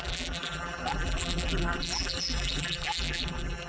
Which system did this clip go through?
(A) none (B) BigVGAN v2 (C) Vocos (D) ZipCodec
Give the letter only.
B